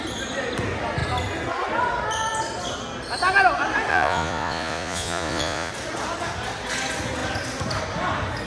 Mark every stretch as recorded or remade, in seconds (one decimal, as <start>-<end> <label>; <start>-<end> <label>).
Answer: 0.0-3.9 recorded; 3.9-5.7 remade; 5.7-8.5 recorded